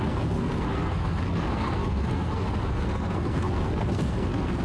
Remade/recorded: remade